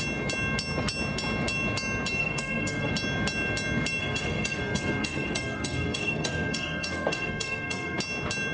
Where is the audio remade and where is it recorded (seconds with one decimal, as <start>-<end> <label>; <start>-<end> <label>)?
0.0-2.2 recorded; 2.2-2.9 remade; 2.9-4.0 recorded; 4.0-8.0 remade; 8.0-8.5 recorded